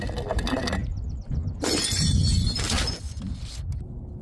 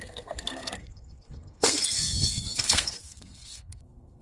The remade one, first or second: second